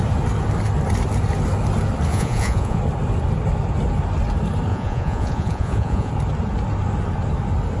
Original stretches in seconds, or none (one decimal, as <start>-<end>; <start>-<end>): 0.0-2.1; 2.8-4.7; 6.1-7.8